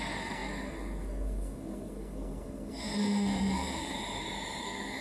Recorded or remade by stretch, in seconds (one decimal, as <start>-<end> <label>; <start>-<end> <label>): 0.0-4.0 remade; 4.0-4.6 recorded; 4.6-5.0 remade

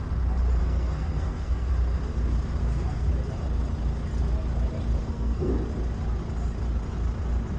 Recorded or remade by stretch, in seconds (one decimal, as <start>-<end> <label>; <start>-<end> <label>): 0.0-0.6 recorded; 0.6-1.7 remade; 1.7-2.6 recorded; 2.6-3.1 remade; 3.1-5.0 recorded; 5.0-5.5 remade; 5.5-7.6 recorded

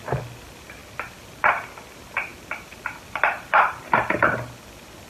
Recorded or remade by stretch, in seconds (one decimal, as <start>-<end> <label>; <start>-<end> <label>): 0.0-5.1 recorded

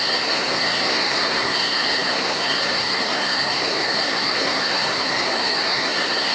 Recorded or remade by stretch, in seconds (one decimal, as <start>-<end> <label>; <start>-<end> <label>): 0.0-6.3 remade

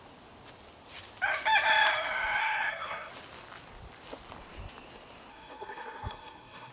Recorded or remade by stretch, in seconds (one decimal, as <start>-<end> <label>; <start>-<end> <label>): 0.0-2.4 recorded; 2.4-3.1 remade; 3.1-5.3 recorded; 5.3-6.7 remade